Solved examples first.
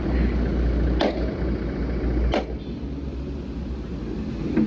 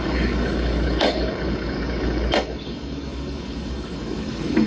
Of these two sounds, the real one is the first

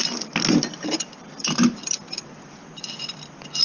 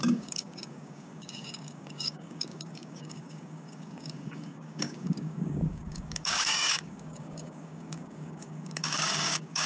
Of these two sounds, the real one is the first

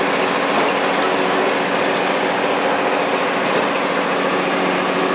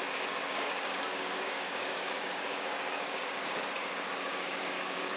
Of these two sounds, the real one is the first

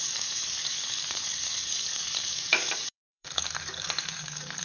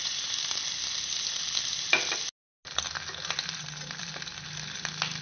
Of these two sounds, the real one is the second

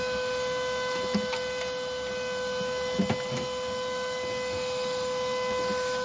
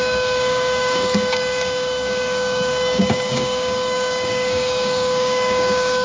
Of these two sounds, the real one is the first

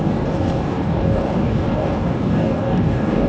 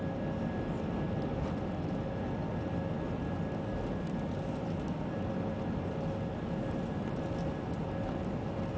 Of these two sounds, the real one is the second